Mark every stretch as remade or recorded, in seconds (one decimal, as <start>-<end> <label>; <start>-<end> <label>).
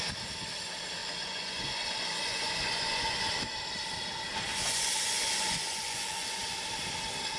0.0-1.0 recorded; 1.0-3.2 remade; 3.2-4.5 recorded; 4.5-6.4 remade; 6.4-7.4 recorded